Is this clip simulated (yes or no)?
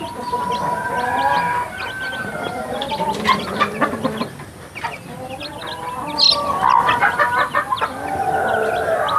no